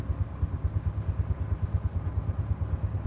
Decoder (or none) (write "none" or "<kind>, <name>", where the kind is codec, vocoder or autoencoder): none